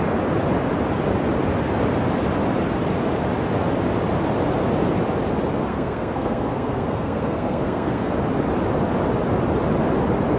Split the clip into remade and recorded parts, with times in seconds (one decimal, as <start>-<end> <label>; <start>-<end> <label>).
0.0-5.7 recorded; 5.7-8.1 remade; 8.1-10.4 recorded